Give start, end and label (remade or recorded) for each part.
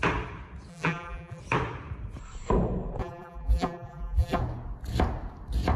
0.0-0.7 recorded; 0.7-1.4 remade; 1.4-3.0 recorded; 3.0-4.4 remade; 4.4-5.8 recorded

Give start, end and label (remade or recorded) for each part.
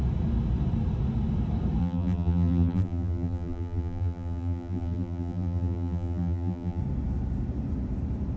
0.0-1.8 recorded; 1.8-6.8 remade; 6.8-8.4 recorded